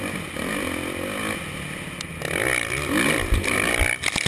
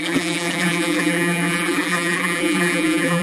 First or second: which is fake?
second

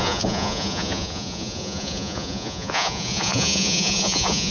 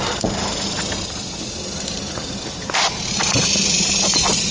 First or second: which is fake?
first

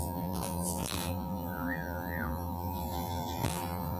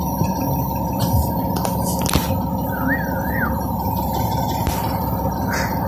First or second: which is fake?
first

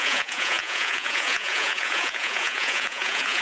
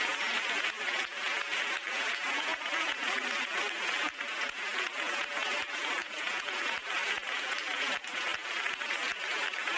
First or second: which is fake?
first